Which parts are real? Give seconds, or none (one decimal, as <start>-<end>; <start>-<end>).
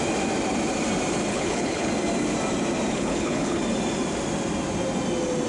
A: 0.0-1.3; 1.9-2.9; 3.6-5.5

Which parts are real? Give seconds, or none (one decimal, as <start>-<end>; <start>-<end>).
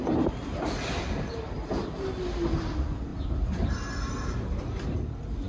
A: 0.0-5.5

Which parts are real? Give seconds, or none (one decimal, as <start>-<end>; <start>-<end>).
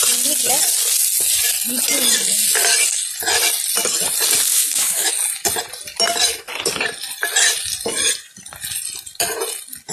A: 0.0-4.5; 5.1-9.9